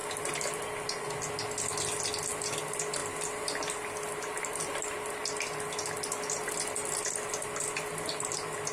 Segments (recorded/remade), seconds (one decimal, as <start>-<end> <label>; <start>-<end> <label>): 0.0-8.7 recorded